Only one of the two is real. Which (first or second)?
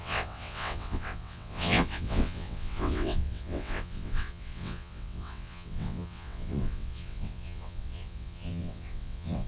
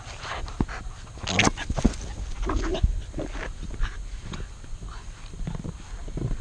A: second